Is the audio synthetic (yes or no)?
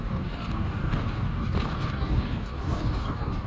yes